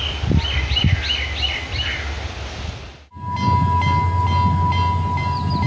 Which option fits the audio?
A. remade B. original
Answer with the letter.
B